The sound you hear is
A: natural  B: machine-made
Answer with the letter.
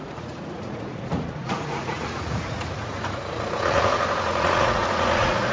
B